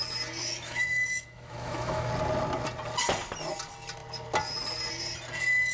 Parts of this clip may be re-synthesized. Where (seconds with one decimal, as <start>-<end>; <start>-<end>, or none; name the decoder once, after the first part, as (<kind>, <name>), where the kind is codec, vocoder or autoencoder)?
0.4-2.1 (autoencoder, DAC-VAE)